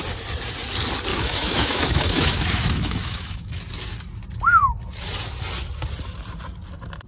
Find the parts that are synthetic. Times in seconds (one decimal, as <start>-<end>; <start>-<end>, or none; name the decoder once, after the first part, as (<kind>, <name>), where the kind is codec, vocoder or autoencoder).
1.1-3.6 (autoencoder, DAC-VAE)